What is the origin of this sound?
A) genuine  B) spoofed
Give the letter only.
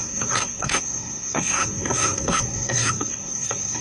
B